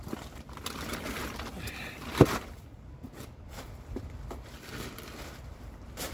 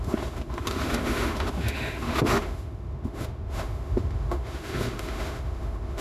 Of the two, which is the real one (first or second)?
first